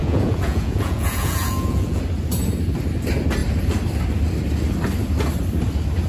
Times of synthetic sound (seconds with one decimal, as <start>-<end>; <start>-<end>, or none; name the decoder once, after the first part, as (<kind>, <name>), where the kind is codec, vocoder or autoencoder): 0.0-2.0 (vocoder, Vocos)